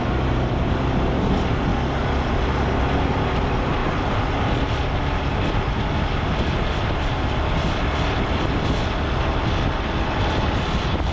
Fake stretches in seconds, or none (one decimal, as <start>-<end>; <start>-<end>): none